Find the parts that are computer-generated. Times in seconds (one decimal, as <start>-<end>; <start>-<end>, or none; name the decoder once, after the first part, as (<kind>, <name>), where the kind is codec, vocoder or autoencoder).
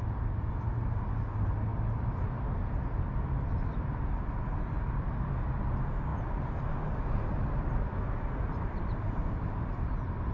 none